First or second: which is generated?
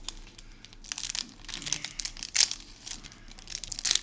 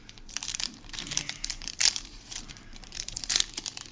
second